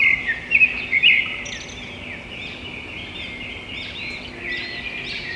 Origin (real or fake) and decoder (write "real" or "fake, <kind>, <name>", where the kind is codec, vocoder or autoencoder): real